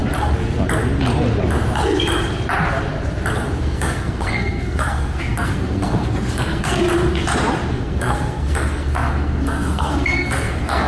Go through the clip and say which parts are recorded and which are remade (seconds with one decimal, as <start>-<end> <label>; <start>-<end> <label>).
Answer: 0.0-3.6 recorded; 3.6-6.8 remade; 6.8-7.7 recorded; 7.7-10.9 remade